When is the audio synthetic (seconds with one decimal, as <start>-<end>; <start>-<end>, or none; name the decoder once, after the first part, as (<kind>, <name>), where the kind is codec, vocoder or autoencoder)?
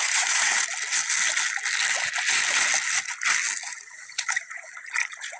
0.0-0.5 (vocoder, Vocos); 3.7-5.4